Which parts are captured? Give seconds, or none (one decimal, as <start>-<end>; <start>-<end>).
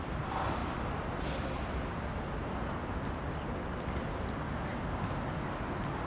0.0-6.1